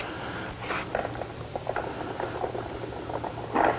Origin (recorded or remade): recorded